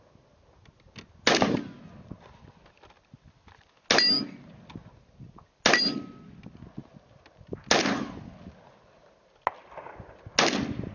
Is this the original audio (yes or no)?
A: yes